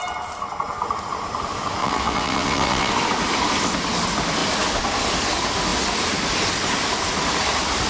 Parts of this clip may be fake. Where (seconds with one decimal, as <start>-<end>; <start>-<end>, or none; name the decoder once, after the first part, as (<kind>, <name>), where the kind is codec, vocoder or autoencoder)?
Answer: 1.8-2.9 (vocoder, WaveNeXt)